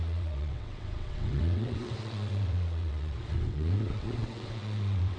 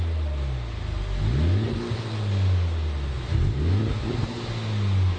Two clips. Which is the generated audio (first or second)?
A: first